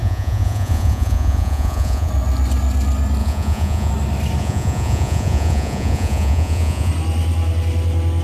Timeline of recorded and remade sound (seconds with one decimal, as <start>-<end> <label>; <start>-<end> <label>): 0.0-2.1 remade; 2.1-3.2 recorded; 3.2-3.9 remade; 3.9-4.4 recorded; 4.4-6.9 remade; 6.9-8.2 recorded